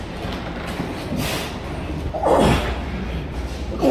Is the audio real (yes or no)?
yes